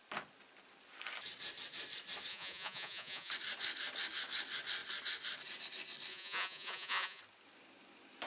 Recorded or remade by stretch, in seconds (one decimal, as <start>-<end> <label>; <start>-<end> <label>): 0.0-2.3 recorded; 2.3-3.3 remade; 3.3-6.1 recorded; 6.1-7.2 remade; 7.2-8.3 recorded